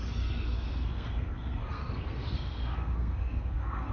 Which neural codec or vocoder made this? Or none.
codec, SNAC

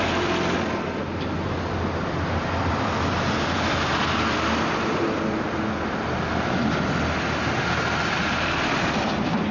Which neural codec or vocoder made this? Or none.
none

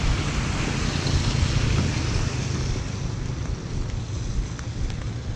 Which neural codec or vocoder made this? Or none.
none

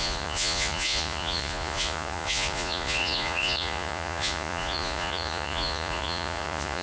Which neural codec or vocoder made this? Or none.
vocoder, Vocos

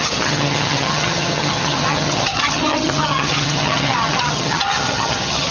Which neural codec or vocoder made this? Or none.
vocoder, HiFi-GAN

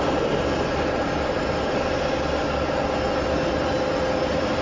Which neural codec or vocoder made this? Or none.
none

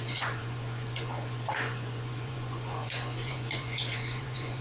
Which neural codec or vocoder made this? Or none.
vocoder, Vocos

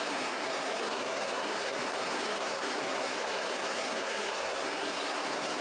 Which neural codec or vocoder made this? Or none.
codec, SNAC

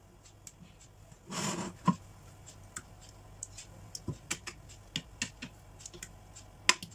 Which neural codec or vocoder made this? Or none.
none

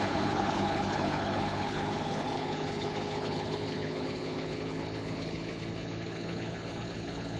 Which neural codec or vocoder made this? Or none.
codec, HILCodec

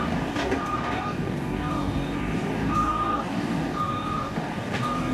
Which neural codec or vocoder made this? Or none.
codec, DAC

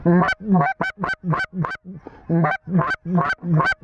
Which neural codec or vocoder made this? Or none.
none